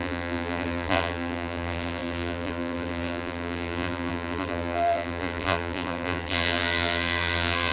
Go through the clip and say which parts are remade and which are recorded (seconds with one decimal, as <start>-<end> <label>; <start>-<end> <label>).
0.0-7.7 remade